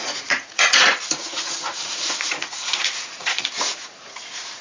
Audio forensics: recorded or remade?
remade